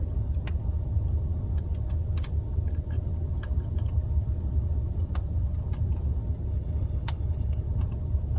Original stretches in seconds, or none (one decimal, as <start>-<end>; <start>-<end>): 0.0-6.5; 7.6-8.4